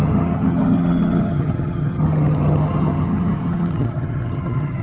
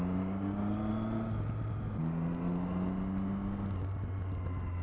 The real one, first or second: second